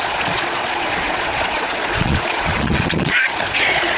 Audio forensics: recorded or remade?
remade